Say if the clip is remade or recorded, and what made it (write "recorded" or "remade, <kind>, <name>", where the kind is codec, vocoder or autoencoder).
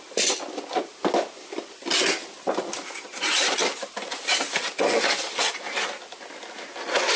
recorded